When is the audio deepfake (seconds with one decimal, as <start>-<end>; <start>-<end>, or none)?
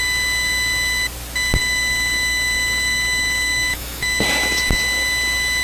1.6-4.2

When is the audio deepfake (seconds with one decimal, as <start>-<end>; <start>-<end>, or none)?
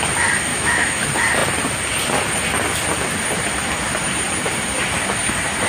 0.5-1.0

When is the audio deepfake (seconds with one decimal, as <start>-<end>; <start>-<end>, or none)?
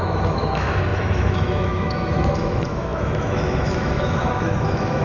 0.0-5.0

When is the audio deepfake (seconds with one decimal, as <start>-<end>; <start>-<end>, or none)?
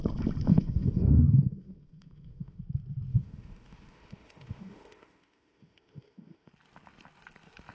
0.5-2.6; 3.1-6.5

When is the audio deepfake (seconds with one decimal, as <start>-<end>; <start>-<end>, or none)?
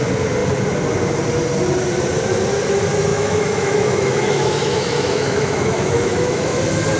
3.1-6.6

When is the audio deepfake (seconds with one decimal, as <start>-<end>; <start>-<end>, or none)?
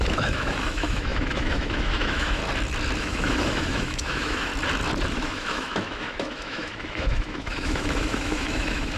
0.0-2.4; 3.0-4.5; 5.1-9.0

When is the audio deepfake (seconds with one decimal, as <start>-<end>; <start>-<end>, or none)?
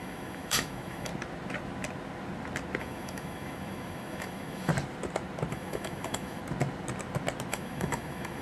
0.0-1.1; 2.8-4.7; 5.5-6.4; 7.5-8.4